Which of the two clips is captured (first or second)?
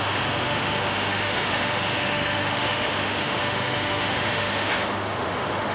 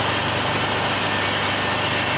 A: second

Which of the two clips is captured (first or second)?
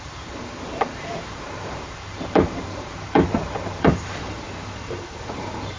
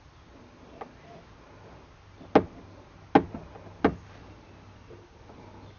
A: second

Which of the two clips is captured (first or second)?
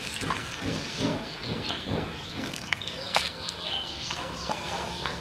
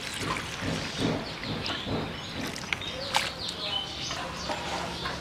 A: second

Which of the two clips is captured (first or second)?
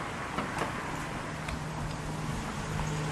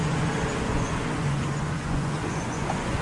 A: first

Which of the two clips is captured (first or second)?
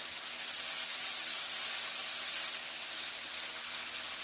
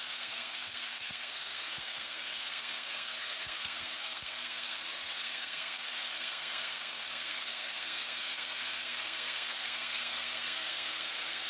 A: first